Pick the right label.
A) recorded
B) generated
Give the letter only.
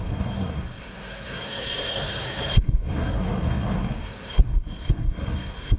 B